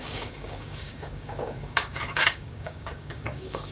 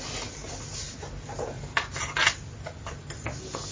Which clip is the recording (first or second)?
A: second